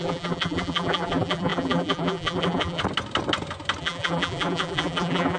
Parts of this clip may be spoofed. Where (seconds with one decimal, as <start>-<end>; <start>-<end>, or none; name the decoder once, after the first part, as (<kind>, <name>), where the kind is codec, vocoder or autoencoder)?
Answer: 0.0-2.8 (vocoder, BigVGAN v2); 3.8-5.4